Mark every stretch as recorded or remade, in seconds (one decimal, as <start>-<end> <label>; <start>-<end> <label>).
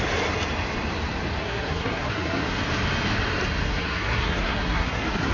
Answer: 0.0-1.4 recorded; 1.4-2.6 remade; 2.6-3.6 recorded; 3.6-5.3 remade